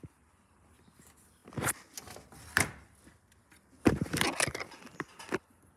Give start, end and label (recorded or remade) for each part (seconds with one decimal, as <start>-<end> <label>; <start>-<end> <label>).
0.0-5.8 recorded